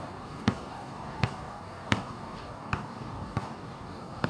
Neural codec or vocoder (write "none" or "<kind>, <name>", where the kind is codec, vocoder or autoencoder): codec, DAC